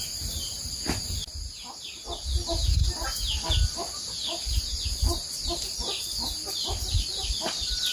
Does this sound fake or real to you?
real